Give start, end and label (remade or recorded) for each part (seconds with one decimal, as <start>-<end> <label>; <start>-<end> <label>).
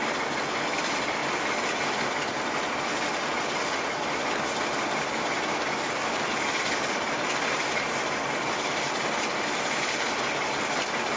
0.0-11.2 recorded